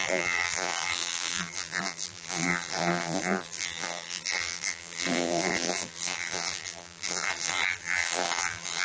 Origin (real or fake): fake